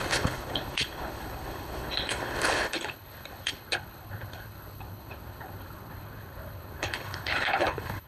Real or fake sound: fake